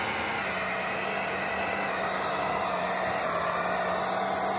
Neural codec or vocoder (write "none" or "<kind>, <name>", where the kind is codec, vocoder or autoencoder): none